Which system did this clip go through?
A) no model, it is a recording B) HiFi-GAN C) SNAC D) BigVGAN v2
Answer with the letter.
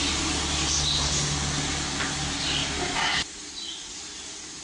D